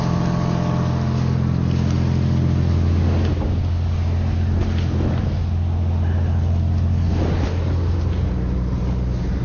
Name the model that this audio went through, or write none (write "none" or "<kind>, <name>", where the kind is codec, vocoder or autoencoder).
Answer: none